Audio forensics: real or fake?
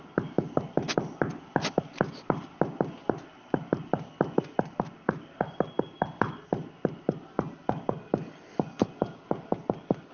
real